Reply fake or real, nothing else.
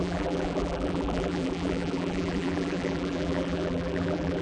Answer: fake